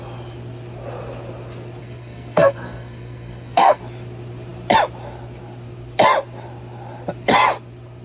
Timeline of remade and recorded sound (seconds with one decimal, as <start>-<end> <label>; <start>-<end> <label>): 0.0-1.8 recorded; 1.8-3.8 remade; 3.8-8.0 recorded

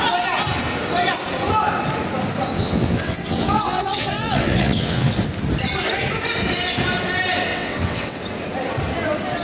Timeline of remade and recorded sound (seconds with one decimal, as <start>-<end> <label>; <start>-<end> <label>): 0.0-2.5 recorded; 2.5-5.1 remade; 5.1-7.5 recorded; 7.5-8.2 remade; 8.2-9.4 recorded